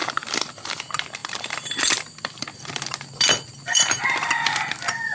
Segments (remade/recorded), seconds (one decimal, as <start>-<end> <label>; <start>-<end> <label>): 0.0-0.7 remade; 0.7-1.2 recorded; 1.2-4.3 remade; 4.3-5.1 recorded